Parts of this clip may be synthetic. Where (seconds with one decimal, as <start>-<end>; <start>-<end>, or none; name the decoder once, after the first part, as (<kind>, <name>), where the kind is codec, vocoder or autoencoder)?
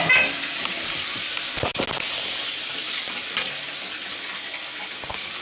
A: none